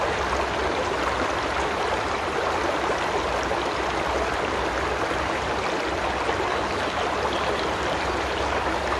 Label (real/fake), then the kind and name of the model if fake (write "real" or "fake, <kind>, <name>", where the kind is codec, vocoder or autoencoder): real